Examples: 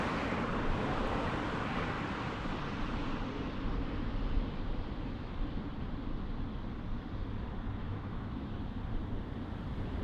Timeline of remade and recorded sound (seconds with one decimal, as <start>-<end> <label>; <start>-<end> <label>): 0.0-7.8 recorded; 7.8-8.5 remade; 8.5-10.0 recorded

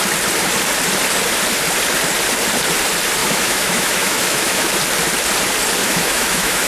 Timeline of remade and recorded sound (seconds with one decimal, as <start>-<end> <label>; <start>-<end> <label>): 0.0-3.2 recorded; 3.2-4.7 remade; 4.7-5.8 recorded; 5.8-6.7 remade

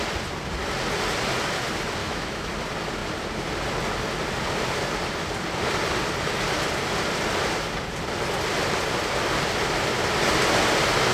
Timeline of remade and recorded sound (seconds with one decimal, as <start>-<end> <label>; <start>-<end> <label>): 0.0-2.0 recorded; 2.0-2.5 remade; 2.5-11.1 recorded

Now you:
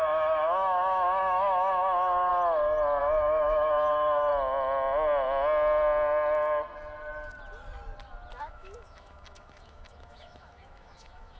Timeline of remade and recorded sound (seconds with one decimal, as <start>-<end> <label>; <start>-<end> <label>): 0.0-2.3 remade; 2.3-3.0 recorded; 3.0-4.3 remade; 4.3-8.4 recorded; 8.4-11.4 remade

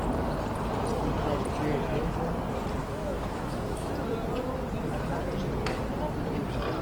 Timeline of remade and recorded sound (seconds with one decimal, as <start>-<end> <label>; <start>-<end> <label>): 0.0-2.8 recorded; 2.8-3.9 remade; 3.9-6.8 recorded